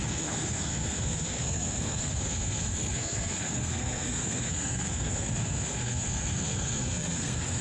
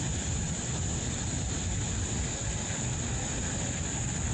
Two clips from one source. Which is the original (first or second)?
second